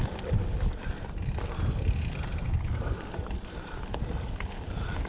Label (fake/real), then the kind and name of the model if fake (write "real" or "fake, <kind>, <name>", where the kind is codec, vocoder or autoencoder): real